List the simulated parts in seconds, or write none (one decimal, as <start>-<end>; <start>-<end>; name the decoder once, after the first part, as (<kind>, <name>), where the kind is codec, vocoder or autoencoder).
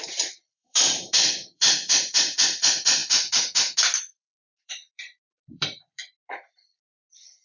0.0-3.0 (vocoder, BigVGAN v2); 3.8-7.4